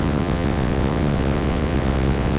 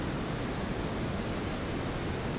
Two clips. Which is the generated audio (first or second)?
first